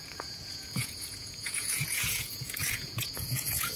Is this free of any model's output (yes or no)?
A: no